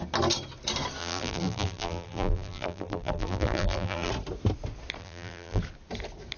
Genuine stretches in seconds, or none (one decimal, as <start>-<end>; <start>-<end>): 0.0-1.0; 4.1-5.0; 5.6-6.4